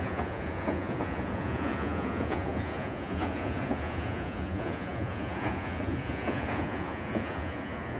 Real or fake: fake